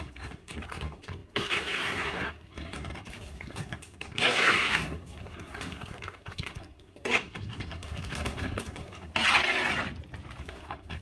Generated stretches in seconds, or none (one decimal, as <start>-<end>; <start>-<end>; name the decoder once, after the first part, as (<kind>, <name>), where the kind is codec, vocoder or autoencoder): 0.0-9.1 (codec, SNAC); 10.4-11.0